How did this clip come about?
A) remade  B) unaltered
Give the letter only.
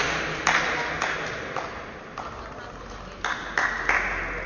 B